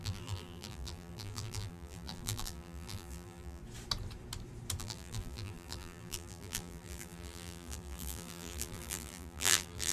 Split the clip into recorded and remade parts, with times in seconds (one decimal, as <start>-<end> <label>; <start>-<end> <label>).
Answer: 0.0-3.6 remade; 3.6-4.8 recorded; 4.8-9.9 remade